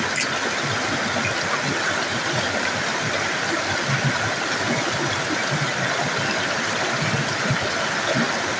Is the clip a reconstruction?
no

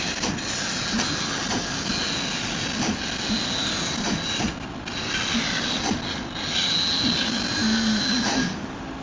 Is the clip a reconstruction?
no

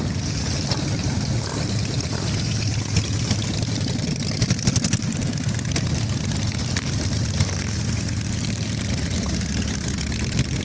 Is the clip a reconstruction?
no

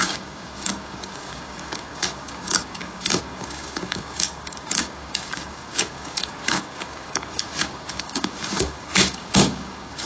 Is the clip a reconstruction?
yes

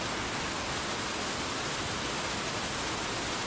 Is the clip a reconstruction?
no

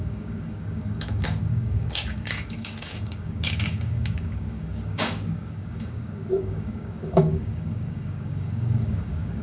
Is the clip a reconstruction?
yes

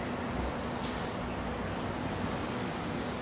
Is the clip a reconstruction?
no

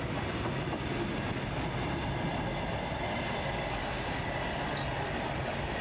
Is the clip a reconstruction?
no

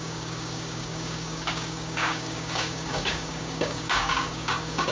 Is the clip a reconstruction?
yes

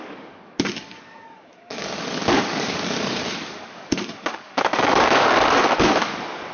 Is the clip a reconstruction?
yes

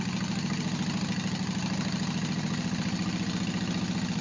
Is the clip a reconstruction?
no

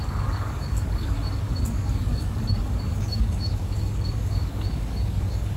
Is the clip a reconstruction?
yes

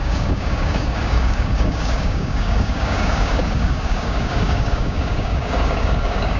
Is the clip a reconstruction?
yes